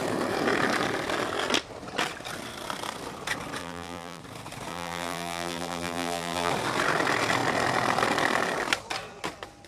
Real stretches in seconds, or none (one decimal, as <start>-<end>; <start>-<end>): 0.0-3.6; 4.2-4.7; 6.5-9.7